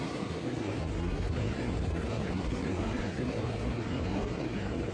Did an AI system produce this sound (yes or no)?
yes